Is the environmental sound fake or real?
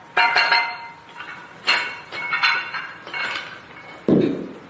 real